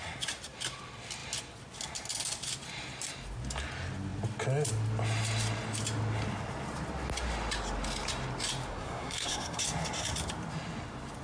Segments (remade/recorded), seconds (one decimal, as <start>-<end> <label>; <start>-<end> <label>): 0.0-8.7 recorded; 8.7-9.6 remade; 9.6-11.2 recorded